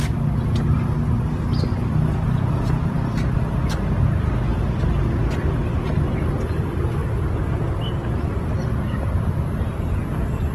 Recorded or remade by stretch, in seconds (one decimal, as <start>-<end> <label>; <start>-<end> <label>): 0.0-10.5 recorded